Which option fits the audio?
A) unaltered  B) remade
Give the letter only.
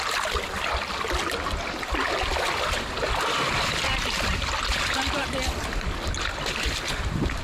A